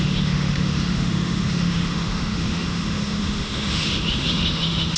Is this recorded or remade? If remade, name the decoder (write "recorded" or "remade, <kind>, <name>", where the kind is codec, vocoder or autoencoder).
remade, autoencoder, DAC-VAE